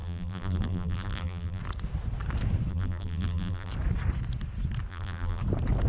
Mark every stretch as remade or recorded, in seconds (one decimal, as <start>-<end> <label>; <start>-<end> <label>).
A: 0.0-1.6 remade; 1.6-2.7 recorded; 2.7-3.7 remade; 3.7-4.9 recorded; 4.9-5.4 remade; 5.4-5.9 recorded